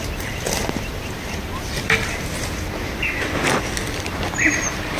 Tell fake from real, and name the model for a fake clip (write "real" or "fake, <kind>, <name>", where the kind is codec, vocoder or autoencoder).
real